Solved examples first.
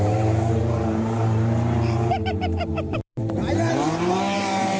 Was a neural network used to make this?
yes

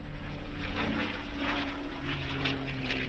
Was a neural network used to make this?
yes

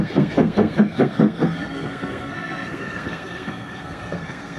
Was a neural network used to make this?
yes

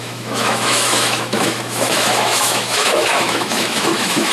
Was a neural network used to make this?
yes